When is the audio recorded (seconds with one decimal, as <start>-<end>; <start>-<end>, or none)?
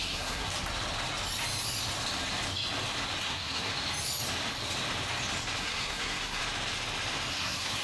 0.5-3.2; 3.7-5.6; 6.4-7.3